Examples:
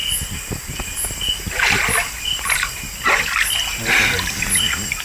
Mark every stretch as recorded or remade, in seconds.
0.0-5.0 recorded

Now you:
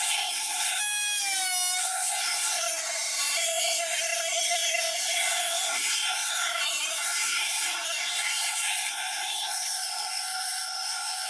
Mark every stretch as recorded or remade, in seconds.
0.0-0.8 remade; 0.8-1.8 recorded; 1.8-11.3 remade

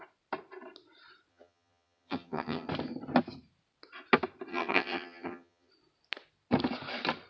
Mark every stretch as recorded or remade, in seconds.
0.0-1.3 recorded; 1.3-2.7 remade; 2.7-4.5 recorded; 4.5-5.7 remade; 5.7-7.3 recorded

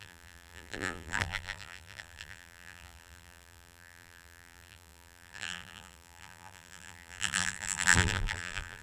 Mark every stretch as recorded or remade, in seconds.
0.0-8.8 remade